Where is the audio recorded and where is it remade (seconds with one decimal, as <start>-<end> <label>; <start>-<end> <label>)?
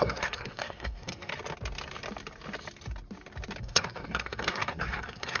0.0-1.3 remade; 1.3-3.6 recorded; 3.6-5.4 remade